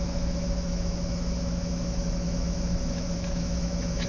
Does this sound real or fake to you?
fake